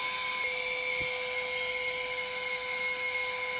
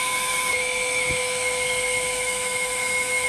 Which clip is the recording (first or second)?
first